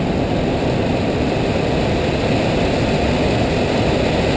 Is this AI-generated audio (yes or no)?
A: no